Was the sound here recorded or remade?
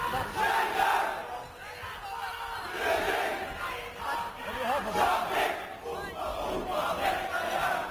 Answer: recorded